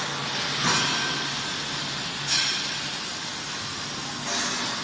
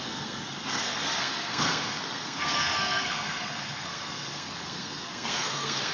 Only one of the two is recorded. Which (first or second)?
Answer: first